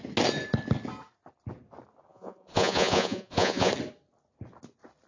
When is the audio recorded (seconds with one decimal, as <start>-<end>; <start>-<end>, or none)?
0.0-2.1; 3.7-5.1